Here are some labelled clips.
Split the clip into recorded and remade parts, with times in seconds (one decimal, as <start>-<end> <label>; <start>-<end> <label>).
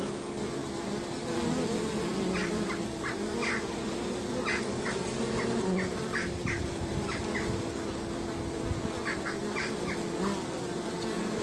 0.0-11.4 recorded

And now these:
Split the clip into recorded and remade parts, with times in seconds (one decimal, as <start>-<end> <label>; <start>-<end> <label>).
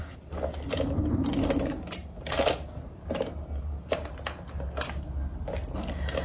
0.0-6.2 recorded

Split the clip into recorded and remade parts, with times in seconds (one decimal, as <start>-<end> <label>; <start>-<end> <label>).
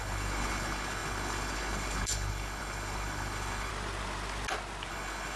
0.0-3.7 remade; 3.7-4.9 recorded; 4.9-5.4 remade